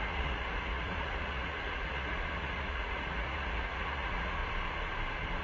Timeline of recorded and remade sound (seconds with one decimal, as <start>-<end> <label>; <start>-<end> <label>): 0.0-4.4 remade; 4.4-5.4 recorded